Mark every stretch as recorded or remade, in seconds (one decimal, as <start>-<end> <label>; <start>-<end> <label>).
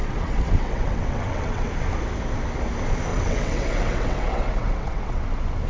0.0-1.7 remade; 1.7-3.1 recorded; 3.1-5.2 remade; 5.2-5.7 recorded